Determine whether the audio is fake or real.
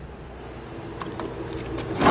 real